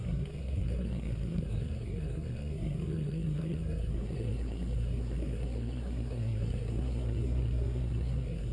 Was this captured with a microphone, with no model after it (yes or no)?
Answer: no